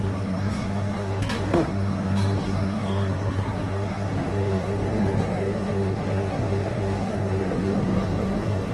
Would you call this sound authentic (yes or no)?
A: no